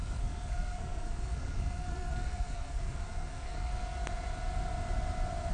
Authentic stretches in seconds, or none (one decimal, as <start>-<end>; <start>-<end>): 3.7-5.5